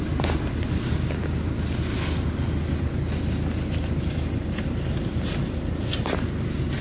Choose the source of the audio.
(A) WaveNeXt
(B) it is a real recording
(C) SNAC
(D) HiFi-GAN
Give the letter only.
B